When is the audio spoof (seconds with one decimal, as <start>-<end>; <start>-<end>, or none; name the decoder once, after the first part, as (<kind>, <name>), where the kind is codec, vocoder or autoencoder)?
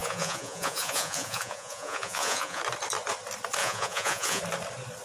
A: 0.0-2.6 (vocoder, Vocos); 3.6-4.4